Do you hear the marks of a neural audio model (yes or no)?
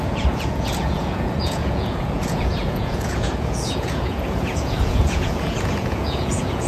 yes